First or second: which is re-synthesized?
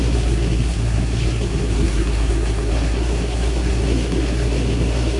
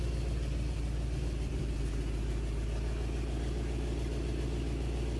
first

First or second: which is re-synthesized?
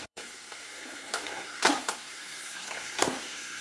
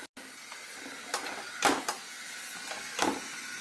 first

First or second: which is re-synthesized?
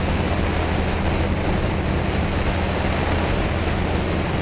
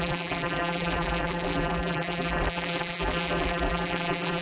second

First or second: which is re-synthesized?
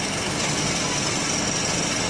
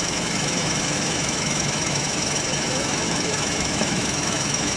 second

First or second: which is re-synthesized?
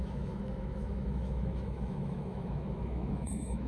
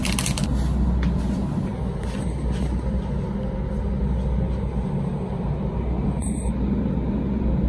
first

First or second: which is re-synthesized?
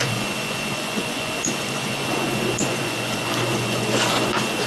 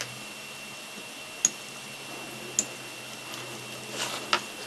first